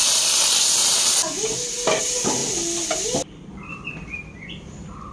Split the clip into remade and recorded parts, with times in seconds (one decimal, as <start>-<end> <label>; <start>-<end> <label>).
0.0-2.0 recorded; 2.0-2.4 remade; 2.4-3.5 recorded; 3.5-5.1 remade